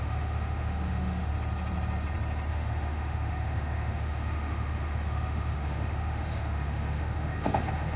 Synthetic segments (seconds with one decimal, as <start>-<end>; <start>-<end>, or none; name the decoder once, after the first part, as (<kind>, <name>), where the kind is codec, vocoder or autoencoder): 0.0-1.3 (autoencoder, DAC-VAE); 2.5-8.0

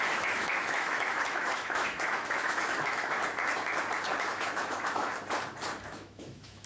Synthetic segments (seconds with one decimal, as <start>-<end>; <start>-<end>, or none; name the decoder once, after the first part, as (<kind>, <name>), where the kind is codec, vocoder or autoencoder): 0.0-3.2 (autoencoder, DAC-VAE); 4.2-5.1; 5.8-6.7

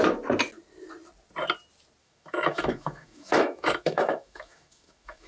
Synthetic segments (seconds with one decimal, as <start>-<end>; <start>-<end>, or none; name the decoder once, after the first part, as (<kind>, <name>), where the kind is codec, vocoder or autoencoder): 2.0-5.3 (autoencoder, DAC-VAE)

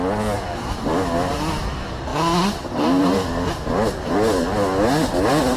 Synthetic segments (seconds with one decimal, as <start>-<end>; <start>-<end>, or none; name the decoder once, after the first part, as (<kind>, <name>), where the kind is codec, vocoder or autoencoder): none

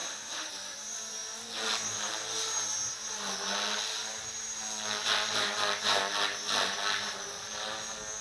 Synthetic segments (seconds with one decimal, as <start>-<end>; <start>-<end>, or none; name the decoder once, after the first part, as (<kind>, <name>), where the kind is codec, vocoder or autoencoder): 0.0-0.5 (autoencoder, DAC-VAE)

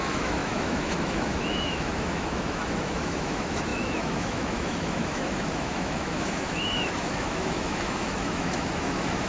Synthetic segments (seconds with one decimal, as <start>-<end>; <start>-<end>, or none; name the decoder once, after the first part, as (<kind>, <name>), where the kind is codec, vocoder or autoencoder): 0.0-9.3 (autoencoder, DAC-VAE)

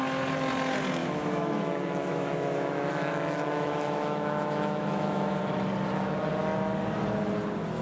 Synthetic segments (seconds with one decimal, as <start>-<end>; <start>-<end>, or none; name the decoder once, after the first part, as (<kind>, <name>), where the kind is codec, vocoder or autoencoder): 1.0-5.4 (autoencoder, DAC-VAE)